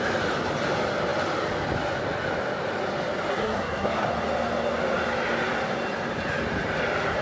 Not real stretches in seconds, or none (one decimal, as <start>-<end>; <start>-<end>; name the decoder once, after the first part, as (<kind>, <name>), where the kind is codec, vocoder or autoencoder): 3.3-4.1 (codec, SNAC)